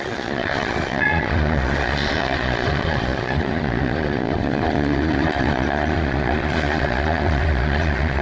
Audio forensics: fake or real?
fake